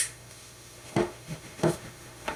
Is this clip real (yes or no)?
no